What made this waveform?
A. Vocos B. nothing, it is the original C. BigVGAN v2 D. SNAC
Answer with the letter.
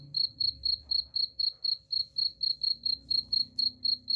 B